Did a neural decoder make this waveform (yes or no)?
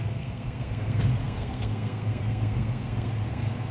yes